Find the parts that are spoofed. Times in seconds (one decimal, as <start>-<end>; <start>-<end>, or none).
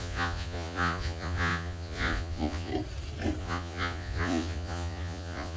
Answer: 0.0-2.7; 3.4-5.6